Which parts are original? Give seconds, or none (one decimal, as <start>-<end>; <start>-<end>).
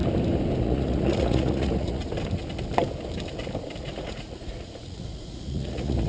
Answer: 0.0-0.6; 2.0-3.8